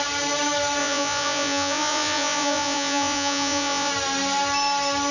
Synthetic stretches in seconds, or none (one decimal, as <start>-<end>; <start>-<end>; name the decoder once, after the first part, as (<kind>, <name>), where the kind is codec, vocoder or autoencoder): 0.8-3.9 (vocoder, Vocos)